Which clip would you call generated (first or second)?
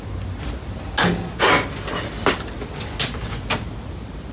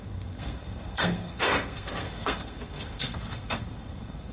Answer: second